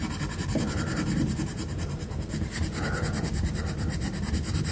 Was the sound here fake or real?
fake